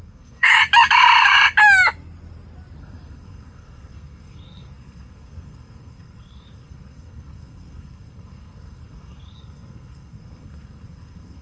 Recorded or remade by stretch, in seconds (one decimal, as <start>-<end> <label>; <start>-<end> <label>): 0.0-0.5 remade; 0.5-2.8 recorded; 2.8-11.4 remade